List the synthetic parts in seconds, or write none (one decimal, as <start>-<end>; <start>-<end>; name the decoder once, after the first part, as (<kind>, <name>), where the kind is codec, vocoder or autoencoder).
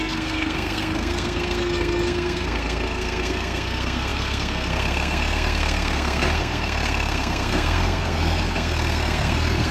0.0-9.7 (codec, SNAC)